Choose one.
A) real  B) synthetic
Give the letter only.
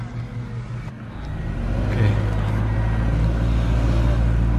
A